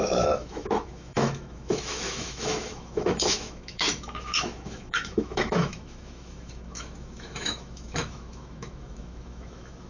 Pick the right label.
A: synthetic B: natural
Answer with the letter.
A